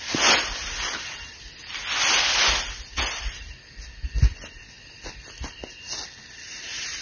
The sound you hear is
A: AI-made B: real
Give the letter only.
B